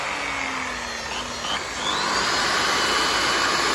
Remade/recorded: recorded